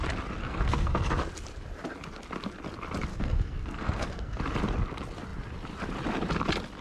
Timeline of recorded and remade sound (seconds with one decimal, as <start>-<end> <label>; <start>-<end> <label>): 0.0-0.4 recorded; 0.4-1.1 remade; 1.1-3.1 recorded; 3.1-4.4 remade; 4.4-6.8 recorded